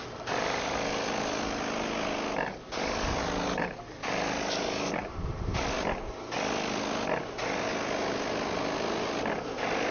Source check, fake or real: real